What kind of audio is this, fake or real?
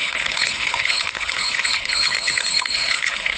fake